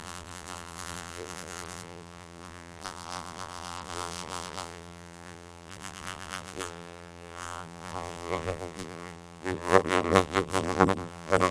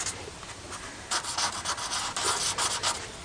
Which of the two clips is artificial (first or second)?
first